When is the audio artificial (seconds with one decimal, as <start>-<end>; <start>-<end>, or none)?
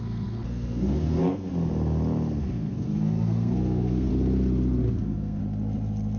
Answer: 0.0-1.5; 2.4-4.1; 4.9-5.4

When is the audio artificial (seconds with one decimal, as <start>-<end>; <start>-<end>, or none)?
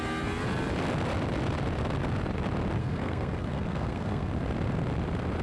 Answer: 2.8-4.3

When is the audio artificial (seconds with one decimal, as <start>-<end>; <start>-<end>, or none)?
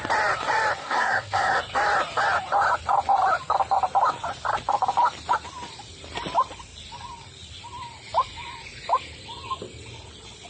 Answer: 0.8-1.6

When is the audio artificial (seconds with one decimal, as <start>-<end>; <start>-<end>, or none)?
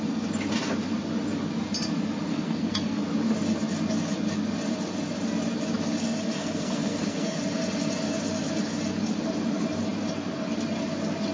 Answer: 2.3-3.0; 6.4-7.4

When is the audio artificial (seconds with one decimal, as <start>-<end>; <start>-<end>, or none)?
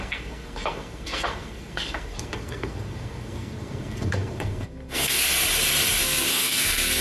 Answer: 0.0-5.3; 6.0-7.0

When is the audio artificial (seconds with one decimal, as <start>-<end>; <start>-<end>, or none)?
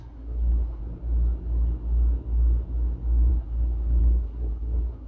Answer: 0.0-0.8; 3.3-5.1